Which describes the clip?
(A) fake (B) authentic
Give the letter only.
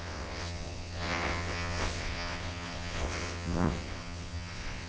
A